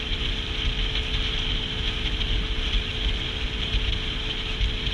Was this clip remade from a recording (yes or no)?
no